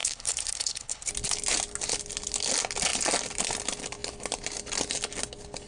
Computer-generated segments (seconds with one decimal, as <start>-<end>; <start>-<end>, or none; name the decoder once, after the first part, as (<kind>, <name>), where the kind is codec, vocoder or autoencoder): 0.0-1.1 (codec, HILCodec)